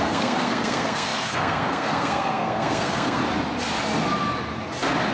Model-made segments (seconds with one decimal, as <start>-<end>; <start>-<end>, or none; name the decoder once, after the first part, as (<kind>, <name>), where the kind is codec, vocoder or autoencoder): 0.0-3.2 (codec, SNAC)